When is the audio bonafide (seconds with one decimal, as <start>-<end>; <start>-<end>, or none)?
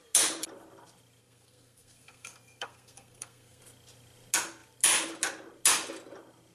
0.0-1.2; 3.6-6.5